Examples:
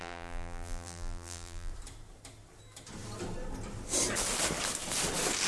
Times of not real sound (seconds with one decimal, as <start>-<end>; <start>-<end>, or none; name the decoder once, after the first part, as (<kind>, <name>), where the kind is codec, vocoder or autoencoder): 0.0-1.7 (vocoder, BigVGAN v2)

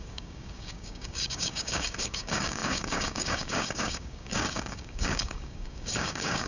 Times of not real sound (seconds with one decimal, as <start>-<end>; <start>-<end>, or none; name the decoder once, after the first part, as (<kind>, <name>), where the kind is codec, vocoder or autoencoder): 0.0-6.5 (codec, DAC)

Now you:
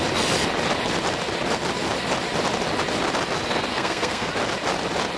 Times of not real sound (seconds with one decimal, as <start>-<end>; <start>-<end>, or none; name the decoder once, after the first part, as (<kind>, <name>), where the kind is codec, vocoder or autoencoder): 3.7-4.3 (codec, SNAC)

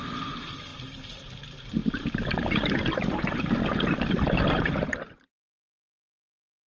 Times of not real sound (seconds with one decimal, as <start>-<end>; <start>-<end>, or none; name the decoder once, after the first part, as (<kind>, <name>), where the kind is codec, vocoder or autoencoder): none